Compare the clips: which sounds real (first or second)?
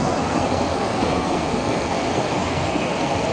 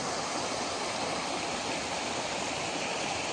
second